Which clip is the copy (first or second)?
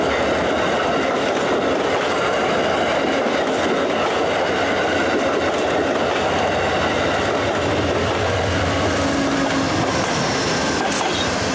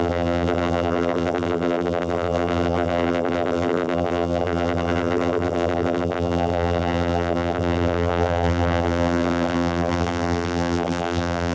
second